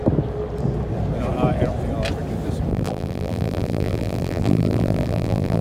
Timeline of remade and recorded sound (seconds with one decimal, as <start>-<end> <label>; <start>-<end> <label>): 0.0-2.7 recorded; 2.7-5.6 remade